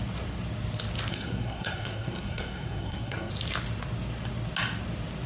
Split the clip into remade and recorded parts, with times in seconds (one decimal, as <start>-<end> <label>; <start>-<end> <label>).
0.0-1.1 recorded; 1.1-3.3 remade; 3.3-5.3 recorded